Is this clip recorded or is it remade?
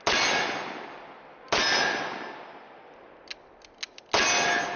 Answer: recorded